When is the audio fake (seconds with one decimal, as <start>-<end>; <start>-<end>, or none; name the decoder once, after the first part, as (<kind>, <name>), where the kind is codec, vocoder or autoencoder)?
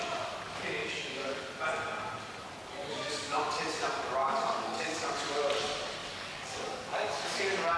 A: 0.8-1.4 (codec, DAC); 2.8-3.4; 4.2-5.2; 6.0-7.8